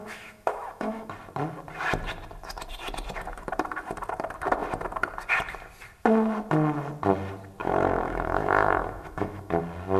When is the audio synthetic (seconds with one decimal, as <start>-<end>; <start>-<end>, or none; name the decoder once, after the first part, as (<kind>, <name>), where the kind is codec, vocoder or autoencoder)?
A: 0.0-1.1 (autoencoder, DAC-VAE); 7.6-9.6